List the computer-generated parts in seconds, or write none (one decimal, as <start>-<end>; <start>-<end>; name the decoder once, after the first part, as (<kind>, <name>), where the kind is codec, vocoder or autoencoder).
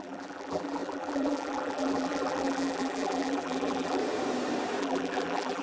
0.0-4.0 (vocoder, BigVGAN v2); 4.8-5.6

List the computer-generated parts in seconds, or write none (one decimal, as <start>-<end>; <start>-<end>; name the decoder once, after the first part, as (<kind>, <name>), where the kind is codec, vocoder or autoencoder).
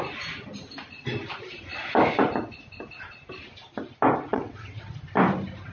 4.3-4.9 (vocoder, WaveNeXt)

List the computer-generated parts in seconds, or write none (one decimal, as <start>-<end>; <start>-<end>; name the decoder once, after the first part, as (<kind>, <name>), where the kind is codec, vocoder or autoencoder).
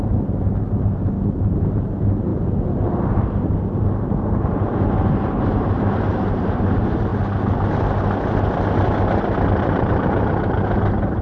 0.0-2.3 (vocoder, BigVGAN v2); 3.8-7.1; 9.5-11.2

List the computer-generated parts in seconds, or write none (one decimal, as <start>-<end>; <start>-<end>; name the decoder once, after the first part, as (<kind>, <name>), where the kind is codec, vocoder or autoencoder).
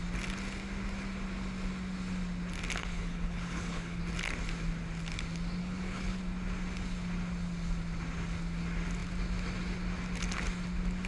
2.8-4.0 (codec, HILCodec); 5.6-6.2